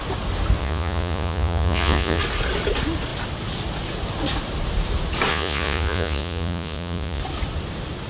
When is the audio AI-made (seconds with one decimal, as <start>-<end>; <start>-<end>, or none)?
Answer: 0.6-2.2; 5.3-7.2